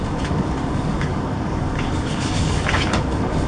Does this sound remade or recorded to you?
remade